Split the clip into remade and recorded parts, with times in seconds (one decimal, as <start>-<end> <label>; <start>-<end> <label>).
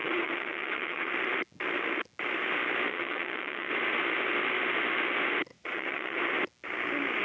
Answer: 0.0-1.1 remade; 1.1-2.9 recorded; 2.9-3.7 remade; 3.7-5.5 recorded; 5.5-6.2 remade; 6.2-7.2 recorded